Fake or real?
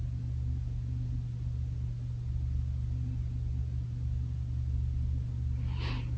real